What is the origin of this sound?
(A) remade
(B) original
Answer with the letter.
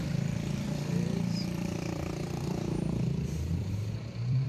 A